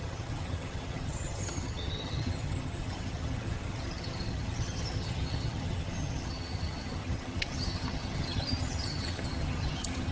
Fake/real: fake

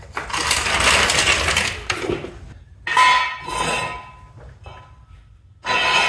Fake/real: real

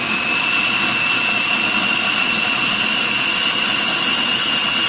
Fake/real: real